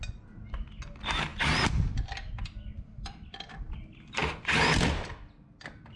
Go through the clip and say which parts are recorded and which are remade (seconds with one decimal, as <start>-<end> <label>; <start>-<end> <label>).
0.0-6.0 recorded